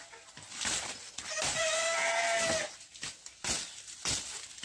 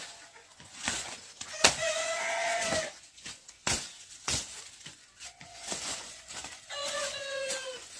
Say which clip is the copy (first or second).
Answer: second